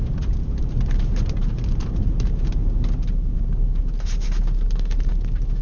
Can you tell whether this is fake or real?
fake